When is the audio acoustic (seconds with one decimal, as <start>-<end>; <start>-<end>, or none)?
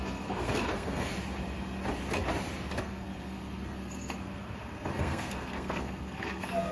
1.1-2.8